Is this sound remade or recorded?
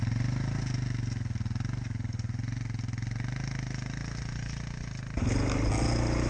recorded